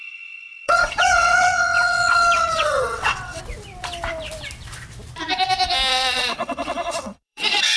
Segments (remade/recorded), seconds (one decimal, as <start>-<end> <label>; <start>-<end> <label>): 0.0-3.4 remade; 3.4-5.9 recorded; 5.9-7.8 remade